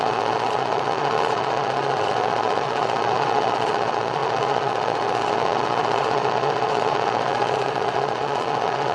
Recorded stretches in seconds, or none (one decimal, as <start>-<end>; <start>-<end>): none